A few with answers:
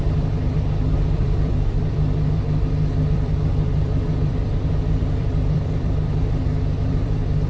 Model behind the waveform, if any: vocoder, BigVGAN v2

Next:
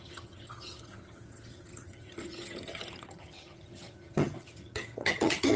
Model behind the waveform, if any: vocoder, HiFi-GAN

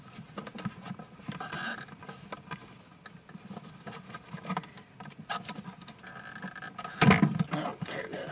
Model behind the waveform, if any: none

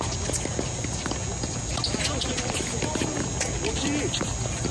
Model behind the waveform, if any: none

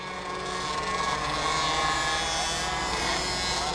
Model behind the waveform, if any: none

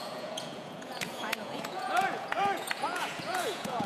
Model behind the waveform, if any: vocoder, Vocos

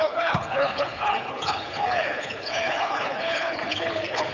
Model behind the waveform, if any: codec, HILCodec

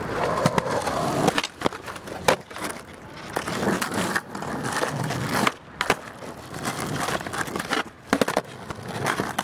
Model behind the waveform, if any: none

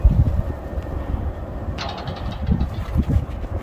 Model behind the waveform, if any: none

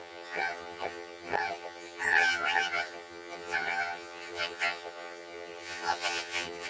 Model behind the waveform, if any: vocoder, HiFi-GAN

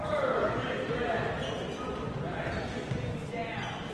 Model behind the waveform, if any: none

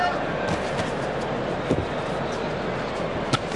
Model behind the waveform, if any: none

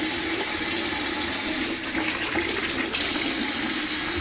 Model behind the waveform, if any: none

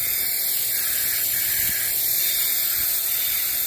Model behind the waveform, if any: none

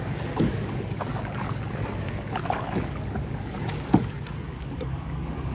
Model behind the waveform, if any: codec, DAC